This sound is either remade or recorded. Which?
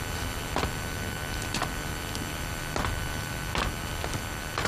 recorded